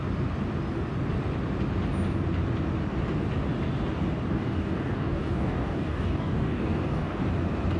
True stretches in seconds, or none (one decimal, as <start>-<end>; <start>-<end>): 0.0-4.3; 7.2-7.8